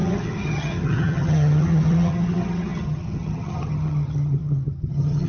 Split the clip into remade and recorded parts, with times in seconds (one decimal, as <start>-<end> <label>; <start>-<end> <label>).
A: 0.0-5.3 remade